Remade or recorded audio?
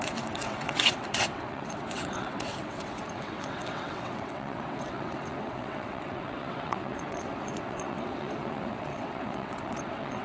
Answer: remade